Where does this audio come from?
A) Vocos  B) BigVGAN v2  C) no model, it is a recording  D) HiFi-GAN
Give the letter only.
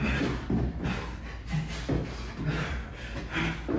C